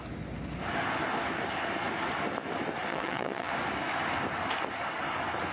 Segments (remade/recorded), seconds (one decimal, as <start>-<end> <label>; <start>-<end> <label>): 0.0-2.9 recorded; 2.9-3.5 remade; 3.5-5.5 recorded